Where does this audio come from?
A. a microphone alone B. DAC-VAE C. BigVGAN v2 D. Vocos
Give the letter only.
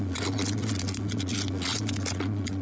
D